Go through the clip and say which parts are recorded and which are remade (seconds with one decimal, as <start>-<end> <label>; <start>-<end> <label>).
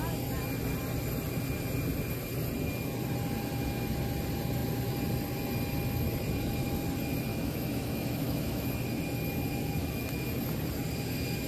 0.0-7.3 recorded; 7.3-8.7 remade; 8.7-9.8 recorded; 9.8-10.4 remade; 10.4-11.5 recorded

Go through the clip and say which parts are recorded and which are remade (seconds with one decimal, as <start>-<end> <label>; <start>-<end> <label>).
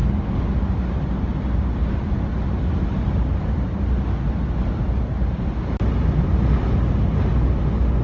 0.0-8.0 recorded